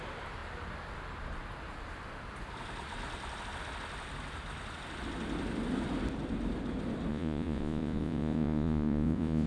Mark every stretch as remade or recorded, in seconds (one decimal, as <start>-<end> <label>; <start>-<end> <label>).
0.0-7.1 recorded; 7.1-9.5 remade